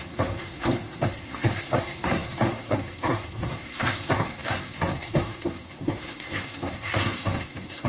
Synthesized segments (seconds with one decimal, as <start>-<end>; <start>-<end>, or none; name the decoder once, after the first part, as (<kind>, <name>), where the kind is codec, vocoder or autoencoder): 0.0-7.9 (codec, SNAC)